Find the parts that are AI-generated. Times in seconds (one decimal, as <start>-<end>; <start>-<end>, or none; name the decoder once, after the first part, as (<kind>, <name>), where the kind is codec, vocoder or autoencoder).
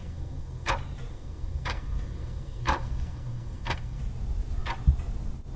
0.0-0.7 (codec, SNAC); 1.1-4.0